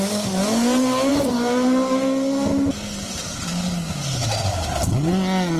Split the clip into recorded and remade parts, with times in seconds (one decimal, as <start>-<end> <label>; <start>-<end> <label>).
0.0-5.6 recorded